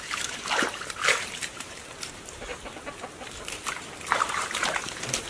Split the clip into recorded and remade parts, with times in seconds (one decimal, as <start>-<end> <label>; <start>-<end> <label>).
0.0-2.5 remade; 2.5-3.4 recorded; 3.4-5.3 remade